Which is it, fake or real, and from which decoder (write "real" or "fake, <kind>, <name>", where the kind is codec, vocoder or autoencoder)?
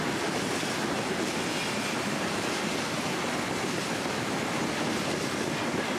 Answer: real